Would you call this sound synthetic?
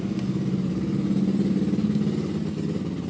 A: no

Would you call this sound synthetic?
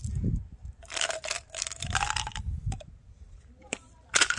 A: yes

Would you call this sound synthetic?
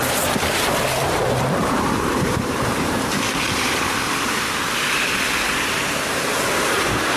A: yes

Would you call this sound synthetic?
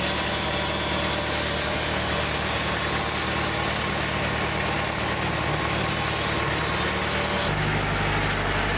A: no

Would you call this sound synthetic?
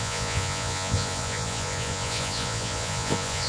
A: yes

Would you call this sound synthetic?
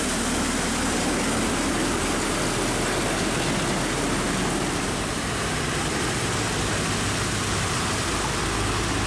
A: no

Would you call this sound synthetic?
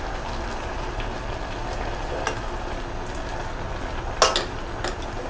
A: no